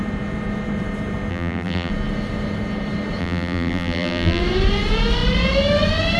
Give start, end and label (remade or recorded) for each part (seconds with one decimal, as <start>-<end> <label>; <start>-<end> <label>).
0.0-1.3 recorded; 1.3-1.9 remade; 1.9-3.2 recorded; 3.2-4.4 remade; 4.4-6.2 recorded

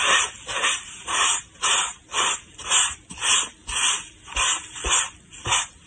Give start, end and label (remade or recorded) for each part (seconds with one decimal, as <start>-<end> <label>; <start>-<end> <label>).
0.0-5.9 recorded

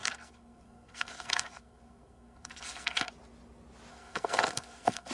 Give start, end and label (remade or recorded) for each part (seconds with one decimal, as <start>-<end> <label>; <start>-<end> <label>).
0.0-3.1 remade; 3.1-3.9 recorded; 3.9-5.1 remade

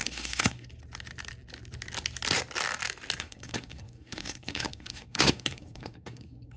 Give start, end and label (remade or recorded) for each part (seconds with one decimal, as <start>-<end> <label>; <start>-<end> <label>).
0.0-0.7 remade; 0.7-3.2 recorded; 3.2-6.6 remade

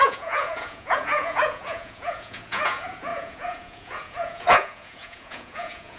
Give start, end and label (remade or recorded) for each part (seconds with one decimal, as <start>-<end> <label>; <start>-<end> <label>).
0.0-6.0 remade

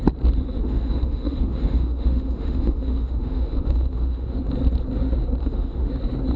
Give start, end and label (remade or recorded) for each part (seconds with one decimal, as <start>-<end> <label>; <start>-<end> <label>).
0.0-0.6 recorded; 0.6-4.4 remade; 4.4-5.4 recorded; 5.4-5.9 remade; 5.9-6.4 recorded

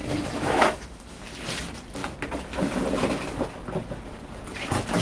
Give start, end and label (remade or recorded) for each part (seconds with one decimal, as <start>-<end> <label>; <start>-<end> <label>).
0.0-1.2 remade; 1.2-5.0 recorded